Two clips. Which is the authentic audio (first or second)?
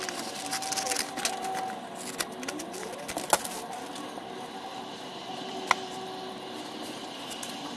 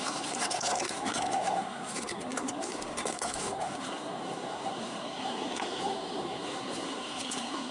first